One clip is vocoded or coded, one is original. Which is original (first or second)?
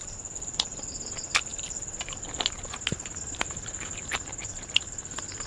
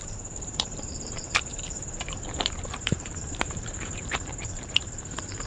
first